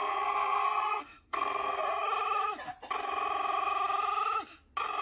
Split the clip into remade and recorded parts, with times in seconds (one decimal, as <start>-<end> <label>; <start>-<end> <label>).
0.0-1.8 remade; 1.8-5.0 recorded